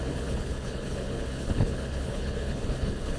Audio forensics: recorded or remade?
remade